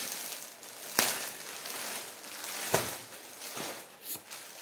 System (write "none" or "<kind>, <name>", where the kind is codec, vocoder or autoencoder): none